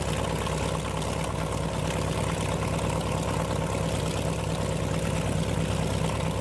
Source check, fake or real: real